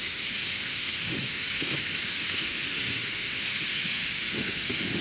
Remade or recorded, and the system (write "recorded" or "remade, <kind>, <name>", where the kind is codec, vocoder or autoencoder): remade, autoencoder, DAC-VAE